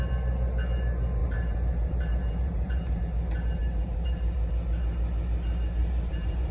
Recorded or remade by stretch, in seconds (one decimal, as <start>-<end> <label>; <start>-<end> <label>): 0.0-1.2 recorded; 1.2-3.0 remade; 3.0-3.6 recorded; 3.6-4.5 remade; 4.5-5.8 recorded; 5.8-6.5 remade